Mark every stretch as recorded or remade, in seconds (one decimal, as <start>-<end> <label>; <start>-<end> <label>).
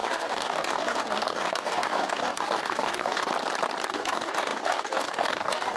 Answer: 0.0-3.3 remade; 3.3-3.9 recorded; 3.9-5.8 remade